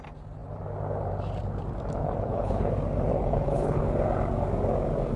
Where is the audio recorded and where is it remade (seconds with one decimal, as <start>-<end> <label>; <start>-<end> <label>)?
0.0-2.0 recorded; 2.0-2.7 remade; 2.7-3.1 recorded; 3.1-3.8 remade; 3.8-5.2 recorded